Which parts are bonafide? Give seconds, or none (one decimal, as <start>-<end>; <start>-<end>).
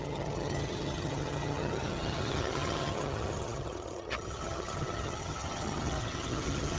none